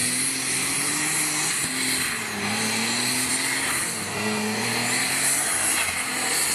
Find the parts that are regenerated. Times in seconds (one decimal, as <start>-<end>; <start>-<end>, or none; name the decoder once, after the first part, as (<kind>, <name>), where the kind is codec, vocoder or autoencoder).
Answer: 3.8-4.7 (codec, SNAC)